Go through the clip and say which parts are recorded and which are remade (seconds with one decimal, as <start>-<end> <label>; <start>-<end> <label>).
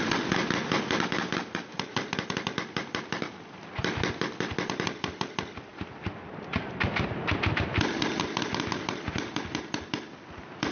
0.0-10.7 recorded